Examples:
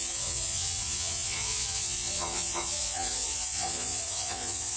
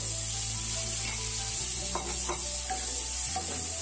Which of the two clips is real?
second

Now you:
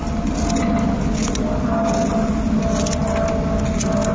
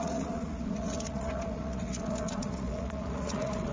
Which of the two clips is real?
first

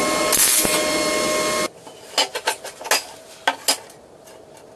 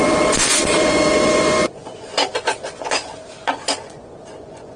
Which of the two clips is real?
first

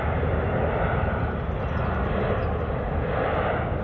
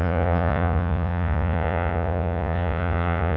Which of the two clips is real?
first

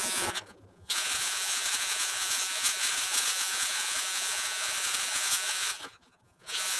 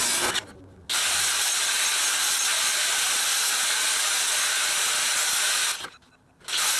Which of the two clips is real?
second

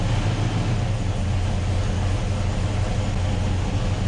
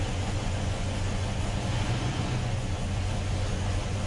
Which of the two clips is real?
first